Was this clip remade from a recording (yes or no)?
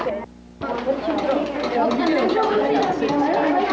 no